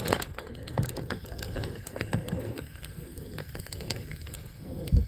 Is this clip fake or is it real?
fake